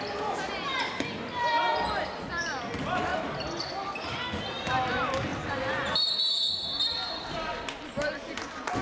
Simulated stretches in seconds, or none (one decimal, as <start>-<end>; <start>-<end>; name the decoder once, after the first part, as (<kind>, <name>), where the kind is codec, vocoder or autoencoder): 5.3-6.1 (vocoder, BigVGAN v2)